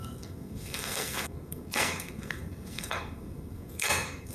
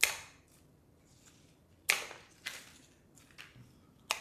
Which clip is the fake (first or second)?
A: first